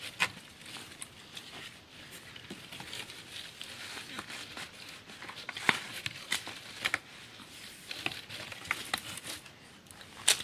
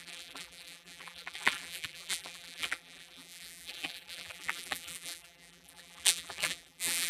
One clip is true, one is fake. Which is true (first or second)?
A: first